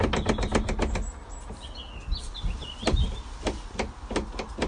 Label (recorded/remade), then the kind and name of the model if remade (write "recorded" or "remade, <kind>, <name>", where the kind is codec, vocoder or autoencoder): recorded